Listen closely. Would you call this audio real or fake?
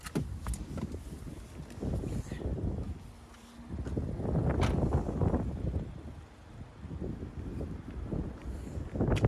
real